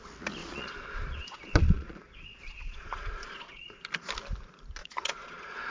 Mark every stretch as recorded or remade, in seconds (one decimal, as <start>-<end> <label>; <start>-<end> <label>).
0.0-0.4 recorded; 0.4-3.8 remade; 3.8-4.8 recorded; 4.8-5.7 remade